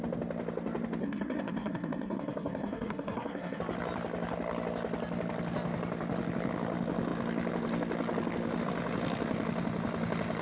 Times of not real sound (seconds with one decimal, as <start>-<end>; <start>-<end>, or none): 1.0-3.6